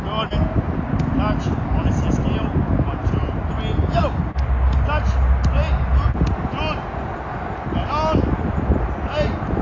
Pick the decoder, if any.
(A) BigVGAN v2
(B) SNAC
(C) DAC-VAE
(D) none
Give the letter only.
D